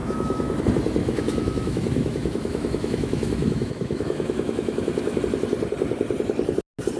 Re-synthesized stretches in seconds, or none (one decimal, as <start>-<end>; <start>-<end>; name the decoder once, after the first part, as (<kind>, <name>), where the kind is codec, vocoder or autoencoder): 0.0-0.6 (autoencoder, DAC-VAE); 1.0-5.2